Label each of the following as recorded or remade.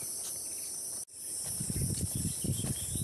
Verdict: recorded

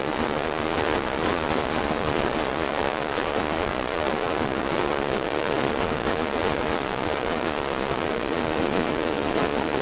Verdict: remade